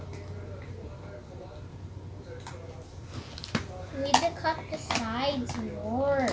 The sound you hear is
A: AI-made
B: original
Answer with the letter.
B